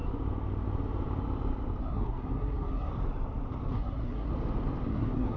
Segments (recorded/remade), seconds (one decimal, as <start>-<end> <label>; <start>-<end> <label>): 0.0-1.8 recorded; 1.8-2.9 remade; 2.9-3.7 recorded; 3.7-4.3 remade; 4.3-4.9 recorded; 4.9-5.4 remade